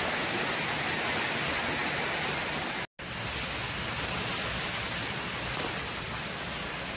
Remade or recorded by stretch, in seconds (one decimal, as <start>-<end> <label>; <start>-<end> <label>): 0.0-7.0 recorded